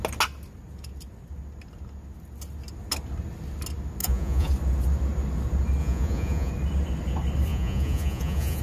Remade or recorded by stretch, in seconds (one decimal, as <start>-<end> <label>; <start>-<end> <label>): 0.0-4.0 recorded; 4.0-4.5 remade; 4.5-5.8 recorded; 5.8-6.5 remade; 6.5-7.5 recorded; 7.5-8.6 remade